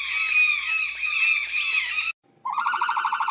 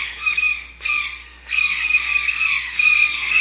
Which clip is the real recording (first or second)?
first